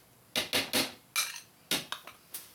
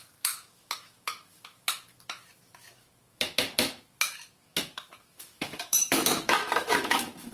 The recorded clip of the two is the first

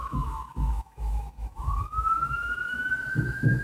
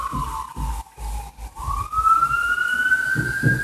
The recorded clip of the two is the second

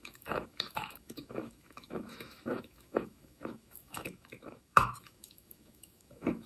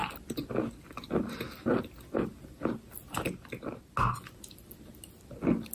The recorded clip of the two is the second